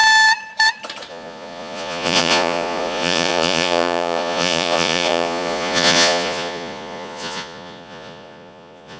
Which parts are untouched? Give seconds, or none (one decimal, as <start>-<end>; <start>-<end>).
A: 0.0-1.1